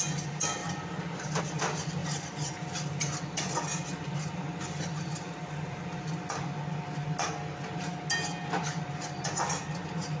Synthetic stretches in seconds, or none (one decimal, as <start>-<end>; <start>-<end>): 0.6-1.4; 2.0-6.1